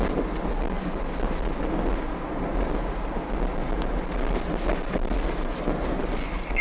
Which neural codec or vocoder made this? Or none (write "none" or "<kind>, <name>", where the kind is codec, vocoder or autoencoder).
none